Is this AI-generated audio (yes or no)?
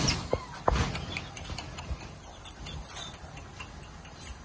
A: no